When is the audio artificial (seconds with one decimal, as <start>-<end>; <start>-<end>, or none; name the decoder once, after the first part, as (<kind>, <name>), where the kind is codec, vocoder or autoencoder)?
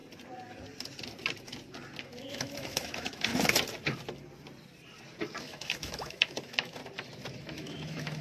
2.0-3.3 (autoencoder, DAC-VAE); 5.4-6.8; 7.4-8.2